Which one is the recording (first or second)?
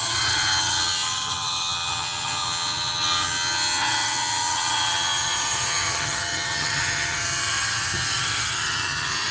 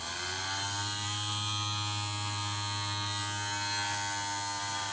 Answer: second